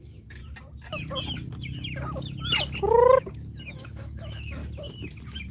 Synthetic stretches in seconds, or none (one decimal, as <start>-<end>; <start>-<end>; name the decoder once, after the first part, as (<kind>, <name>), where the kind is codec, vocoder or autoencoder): 0.0-0.4 (autoencoder, DAC-VAE); 3.7-4.6

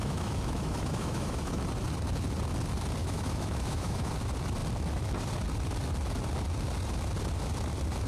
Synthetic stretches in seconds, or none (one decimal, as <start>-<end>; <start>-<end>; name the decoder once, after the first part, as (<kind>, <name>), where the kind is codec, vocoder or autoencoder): 0.0-1.6 (autoencoder, DAC-VAE); 3.0-4.1

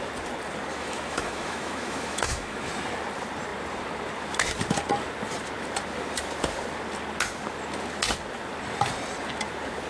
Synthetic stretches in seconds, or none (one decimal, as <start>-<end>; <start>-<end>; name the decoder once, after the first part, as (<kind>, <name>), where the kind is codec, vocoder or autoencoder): 0.7-2.7 (autoencoder, DAC-VAE)

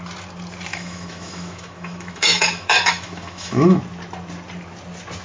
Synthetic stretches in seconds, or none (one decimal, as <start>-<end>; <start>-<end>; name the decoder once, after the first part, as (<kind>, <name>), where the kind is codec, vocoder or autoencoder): 0.7-3.8 (autoencoder, DAC-VAE)

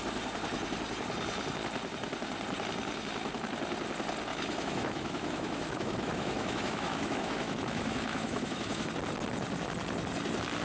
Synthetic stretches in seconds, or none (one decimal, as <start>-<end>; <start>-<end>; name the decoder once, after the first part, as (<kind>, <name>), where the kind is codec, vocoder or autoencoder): 4.3-8.9 (autoencoder, DAC-VAE)

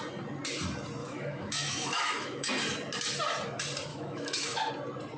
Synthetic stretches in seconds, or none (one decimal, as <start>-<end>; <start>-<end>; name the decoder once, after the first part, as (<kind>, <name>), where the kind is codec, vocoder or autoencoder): 1.0-2.5 (autoencoder, DAC-VAE); 3.9-4.7

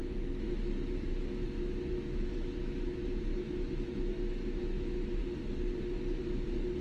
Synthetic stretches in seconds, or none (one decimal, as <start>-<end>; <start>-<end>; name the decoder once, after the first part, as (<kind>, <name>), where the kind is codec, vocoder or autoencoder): 0.0-0.6 (autoencoder, DAC-VAE); 1.1-5.2